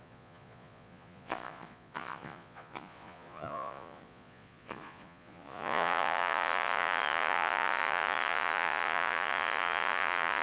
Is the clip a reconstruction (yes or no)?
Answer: yes